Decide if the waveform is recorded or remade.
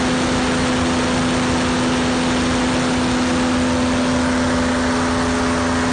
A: recorded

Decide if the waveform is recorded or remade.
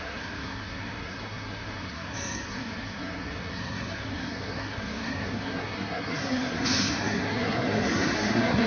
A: remade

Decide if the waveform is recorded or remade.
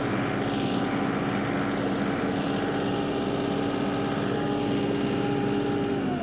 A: recorded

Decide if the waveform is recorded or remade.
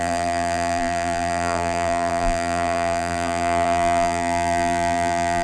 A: remade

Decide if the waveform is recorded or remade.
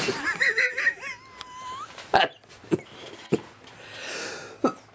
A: recorded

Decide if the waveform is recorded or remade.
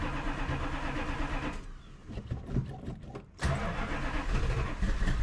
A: recorded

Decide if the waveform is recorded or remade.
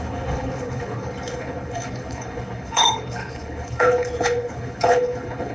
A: remade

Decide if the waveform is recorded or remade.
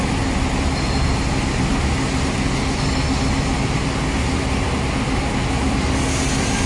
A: recorded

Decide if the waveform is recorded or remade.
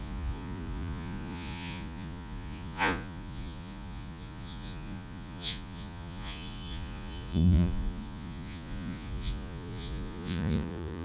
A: remade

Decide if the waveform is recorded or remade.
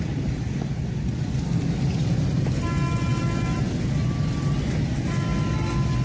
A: recorded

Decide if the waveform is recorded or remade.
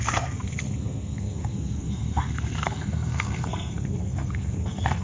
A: remade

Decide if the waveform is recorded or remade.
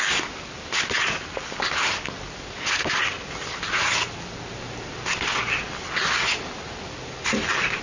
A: recorded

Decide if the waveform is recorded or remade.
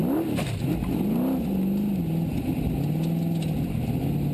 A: recorded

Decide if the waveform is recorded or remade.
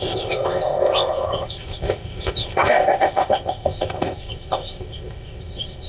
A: remade